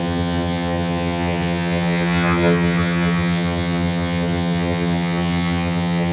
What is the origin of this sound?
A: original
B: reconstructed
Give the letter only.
B